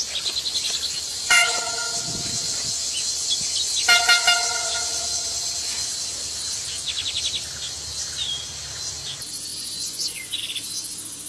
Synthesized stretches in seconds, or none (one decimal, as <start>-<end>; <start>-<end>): 1.1-1.6; 9.5-10.4